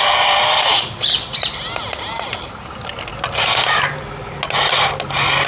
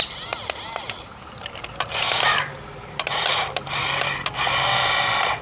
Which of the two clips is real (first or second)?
first